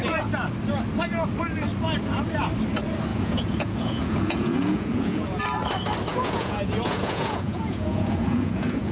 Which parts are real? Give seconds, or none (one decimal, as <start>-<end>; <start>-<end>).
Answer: 0.0-3.1; 5.4-6.1